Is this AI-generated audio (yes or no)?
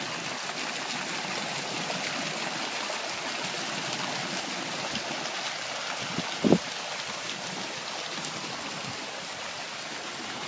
no